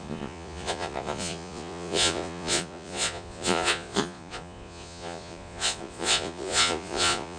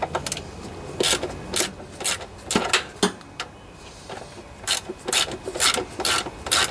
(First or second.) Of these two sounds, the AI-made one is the first